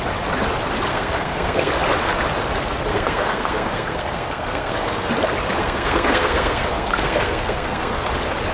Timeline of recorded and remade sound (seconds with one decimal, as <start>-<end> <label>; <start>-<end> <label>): 0.0-0.9 recorded; 0.9-1.7 remade; 1.7-2.9 recorded; 2.9-5.1 remade; 5.1-5.6 recorded; 5.6-8.1 remade; 8.1-8.5 recorded